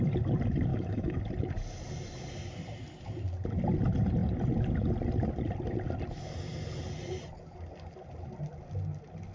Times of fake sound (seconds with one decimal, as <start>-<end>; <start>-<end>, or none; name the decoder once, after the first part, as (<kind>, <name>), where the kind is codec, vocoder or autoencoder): 0.7-1.2 (autoencoder, DAC-VAE)